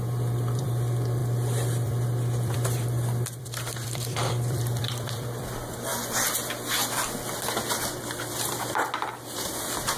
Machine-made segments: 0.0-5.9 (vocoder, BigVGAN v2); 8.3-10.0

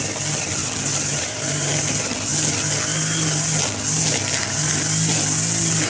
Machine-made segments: 1.1-1.7 (vocoder, BigVGAN v2)